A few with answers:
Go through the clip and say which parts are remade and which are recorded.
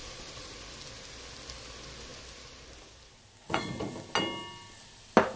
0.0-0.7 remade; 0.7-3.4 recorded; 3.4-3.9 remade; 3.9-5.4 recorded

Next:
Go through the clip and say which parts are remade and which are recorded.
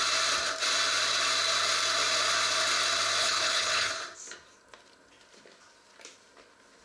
0.0-3.2 recorded; 3.2-3.9 remade; 3.9-6.8 recorded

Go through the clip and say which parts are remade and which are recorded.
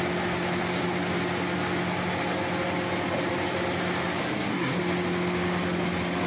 0.0-4.2 recorded; 4.2-4.8 remade; 4.8-6.3 recorded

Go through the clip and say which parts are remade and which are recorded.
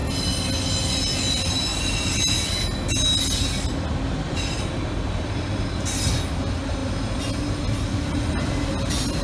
0.0-9.2 recorded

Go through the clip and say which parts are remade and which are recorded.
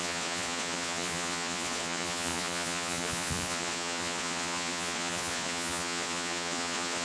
0.0-7.0 remade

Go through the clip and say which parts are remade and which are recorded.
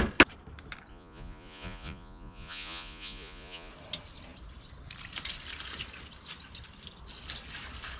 0.0-0.9 recorded; 0.9-3.7 remade; 3.7-8.0 recorded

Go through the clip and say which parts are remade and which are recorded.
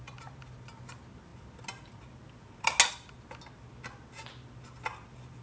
0.0-5.4 recorded